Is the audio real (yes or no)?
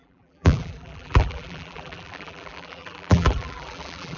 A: no